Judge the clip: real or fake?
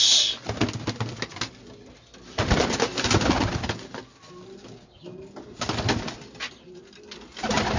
real